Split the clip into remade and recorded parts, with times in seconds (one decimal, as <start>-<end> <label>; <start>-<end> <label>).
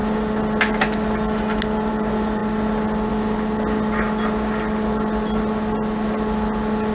0.0-6.9 recorded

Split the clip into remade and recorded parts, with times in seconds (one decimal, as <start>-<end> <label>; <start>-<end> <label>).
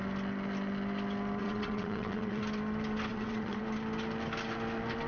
0.0-1.4 recorded; 1.4-2.4 remade; 2.4-3.1 recorded; 3.1-3.6 remade; 3.6-5.1 recorded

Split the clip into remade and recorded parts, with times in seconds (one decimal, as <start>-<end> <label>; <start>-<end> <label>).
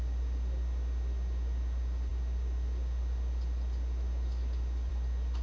0.0-5.4 recorded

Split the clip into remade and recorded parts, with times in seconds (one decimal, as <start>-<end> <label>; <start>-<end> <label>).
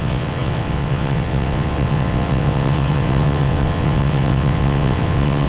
0.0-5.5 remade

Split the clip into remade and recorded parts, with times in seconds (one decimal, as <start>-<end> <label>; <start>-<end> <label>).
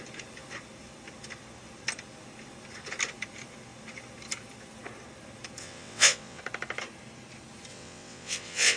0.0-5.6 recorded; 5.6-6.4 remade; 6.4-7.7 recorded; 7.7-8.8 remade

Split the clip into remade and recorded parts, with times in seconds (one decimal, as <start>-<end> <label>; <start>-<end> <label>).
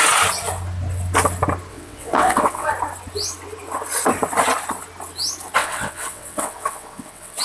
0.0-1.7 recorded; 1.7-2.7 remade; 2.7-5.6 recorded; 5.6-7.4 remade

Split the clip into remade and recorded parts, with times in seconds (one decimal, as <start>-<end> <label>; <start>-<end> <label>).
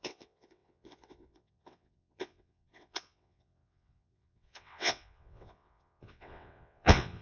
0.0-7.2 remade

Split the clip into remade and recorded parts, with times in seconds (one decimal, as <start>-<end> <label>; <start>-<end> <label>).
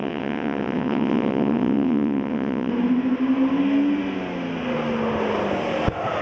0.0-2.7 remade; 2.7-6.2 recorded